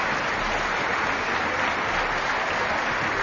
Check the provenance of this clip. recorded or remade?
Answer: recorded